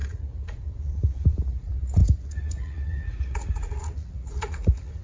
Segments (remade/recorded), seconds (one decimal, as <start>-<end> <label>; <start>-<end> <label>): 0.0-5.0 remade